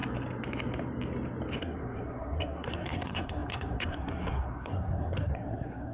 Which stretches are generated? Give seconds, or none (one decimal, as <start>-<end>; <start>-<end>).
1.6-5.9